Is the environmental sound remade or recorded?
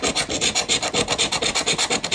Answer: recorded